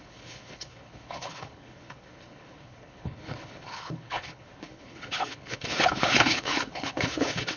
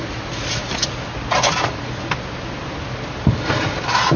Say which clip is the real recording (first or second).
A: second